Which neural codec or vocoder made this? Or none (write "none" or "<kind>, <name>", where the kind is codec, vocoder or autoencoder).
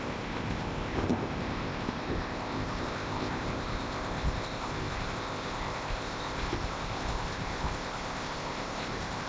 codec, ZipCodec